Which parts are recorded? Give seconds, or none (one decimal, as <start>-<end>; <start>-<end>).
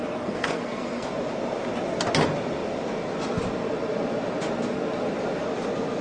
1.1-6.0